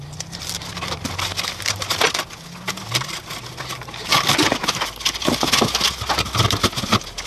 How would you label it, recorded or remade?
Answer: recorded